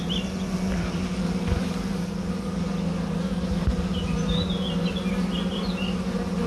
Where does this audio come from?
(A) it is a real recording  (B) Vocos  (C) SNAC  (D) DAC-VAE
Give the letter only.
A